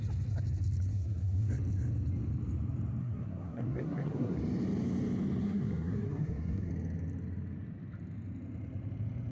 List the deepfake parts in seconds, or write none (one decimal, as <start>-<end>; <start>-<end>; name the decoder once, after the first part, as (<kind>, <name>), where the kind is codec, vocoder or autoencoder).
0.9-1.5 (codec, SNAC); 3.0-4.4; 5.4-6.7